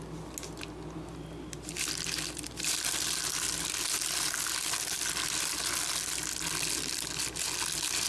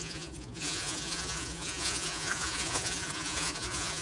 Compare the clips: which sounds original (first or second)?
first